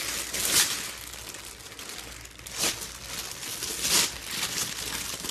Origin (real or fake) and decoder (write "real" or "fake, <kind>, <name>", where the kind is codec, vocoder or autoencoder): real